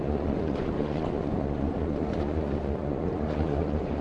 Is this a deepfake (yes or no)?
yes